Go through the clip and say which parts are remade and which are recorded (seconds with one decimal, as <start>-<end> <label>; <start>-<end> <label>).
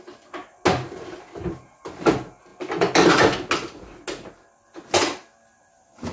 0.0-6.1 recorded